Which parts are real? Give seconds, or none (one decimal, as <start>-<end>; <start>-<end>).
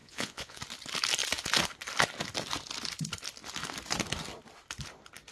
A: 0.6-5.3